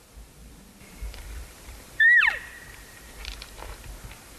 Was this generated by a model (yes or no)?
yes